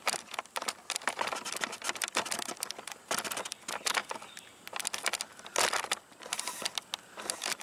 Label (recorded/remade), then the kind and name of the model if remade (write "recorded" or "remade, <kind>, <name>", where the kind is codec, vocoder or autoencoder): recorded